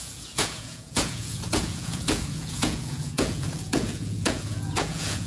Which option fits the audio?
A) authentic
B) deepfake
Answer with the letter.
B